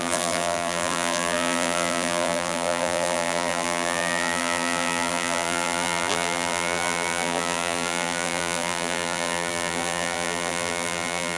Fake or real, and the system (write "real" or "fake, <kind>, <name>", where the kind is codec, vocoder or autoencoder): fake, vocoder, BigVGAN v2